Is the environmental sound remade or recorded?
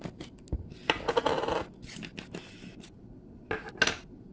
recorded